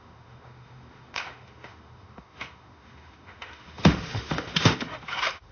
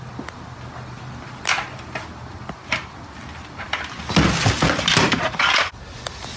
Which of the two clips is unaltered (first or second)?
second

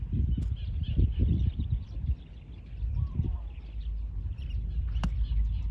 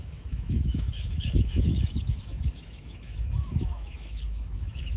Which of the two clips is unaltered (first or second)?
first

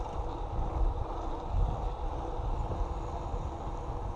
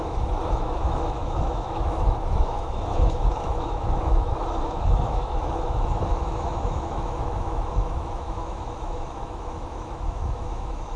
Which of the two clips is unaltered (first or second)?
first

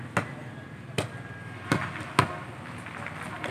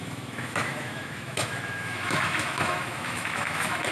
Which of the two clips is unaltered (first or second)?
first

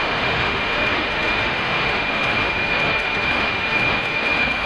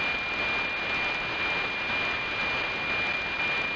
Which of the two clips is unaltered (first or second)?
second